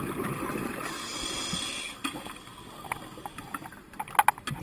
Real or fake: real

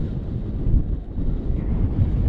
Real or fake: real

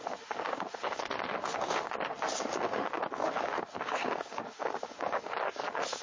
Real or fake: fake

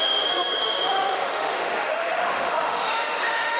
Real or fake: fake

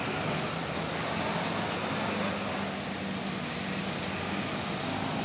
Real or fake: real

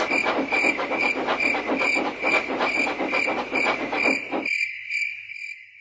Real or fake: real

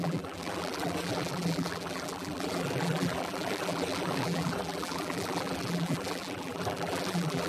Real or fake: fake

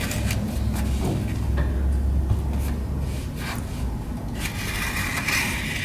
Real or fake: real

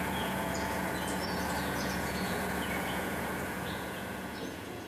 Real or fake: fake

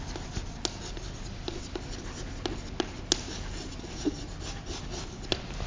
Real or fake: real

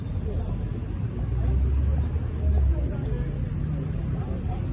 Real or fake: real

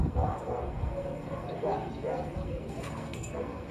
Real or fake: fake